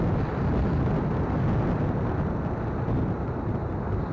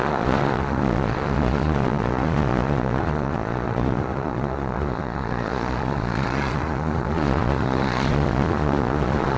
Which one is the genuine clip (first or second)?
first